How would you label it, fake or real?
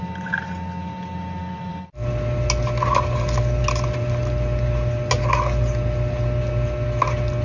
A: real